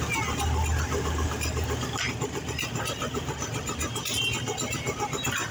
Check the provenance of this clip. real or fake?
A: real